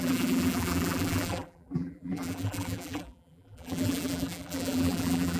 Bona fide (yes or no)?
no